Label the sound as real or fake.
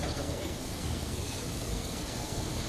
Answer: fake